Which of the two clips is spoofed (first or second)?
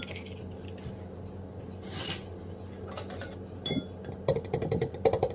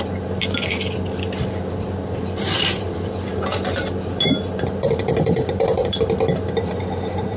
second